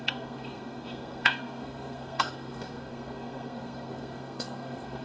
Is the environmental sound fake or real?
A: fake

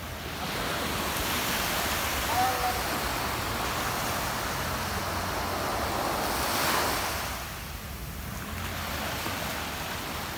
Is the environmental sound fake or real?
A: real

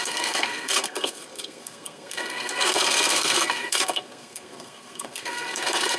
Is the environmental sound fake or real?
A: fake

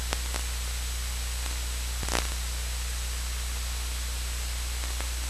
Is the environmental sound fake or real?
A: real